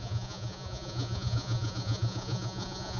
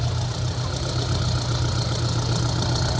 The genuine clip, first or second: second